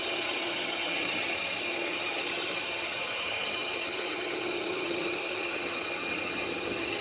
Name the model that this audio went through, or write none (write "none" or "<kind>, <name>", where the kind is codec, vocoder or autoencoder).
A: vocoder, HiFi-GAN